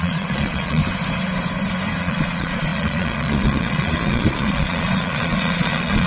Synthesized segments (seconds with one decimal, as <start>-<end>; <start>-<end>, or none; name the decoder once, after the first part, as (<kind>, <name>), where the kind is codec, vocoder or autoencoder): 0.0-0.8 (vocoder, Vocos); 2.0-6.1